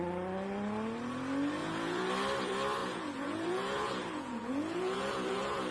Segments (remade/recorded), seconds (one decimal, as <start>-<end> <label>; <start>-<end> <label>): 0.0-1.6 recorded; 1.6-2.1 remade; 2.1-2.8 recorded; 2.8-5.7 remade